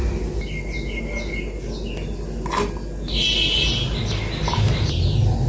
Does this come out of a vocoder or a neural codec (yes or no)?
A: no